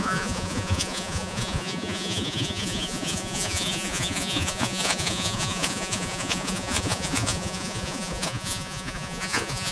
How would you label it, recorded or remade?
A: remade